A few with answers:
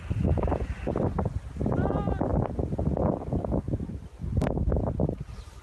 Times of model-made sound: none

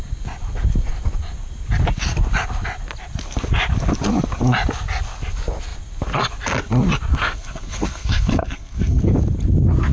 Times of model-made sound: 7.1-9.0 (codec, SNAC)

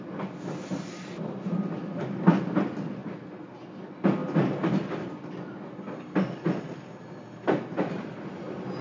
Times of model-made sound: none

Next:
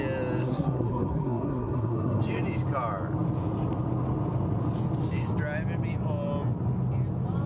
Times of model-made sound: 0.4-2.2 (codec, SNAC)

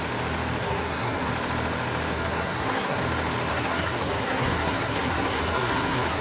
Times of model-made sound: 0.6-1.3 (codec, SNAC); 2.1-3.0; 3.5-6.2